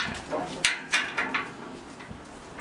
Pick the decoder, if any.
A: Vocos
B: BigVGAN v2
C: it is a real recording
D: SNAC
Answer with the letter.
C